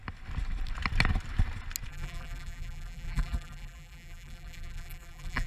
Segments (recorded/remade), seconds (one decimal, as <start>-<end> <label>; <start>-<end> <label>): 0.0-1.9 recorded; 1.9-5.5 remade